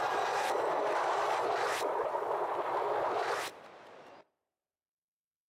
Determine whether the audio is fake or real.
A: fake